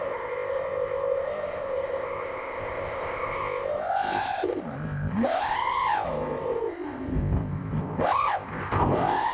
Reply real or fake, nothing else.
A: fake